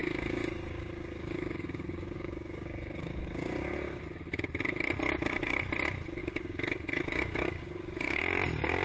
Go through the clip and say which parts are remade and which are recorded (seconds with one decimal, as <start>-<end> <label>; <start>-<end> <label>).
0.0-4.0 remade; 4.0-6.2 recorded; 6.2-8.2 remade; 8.2-8.8 recorded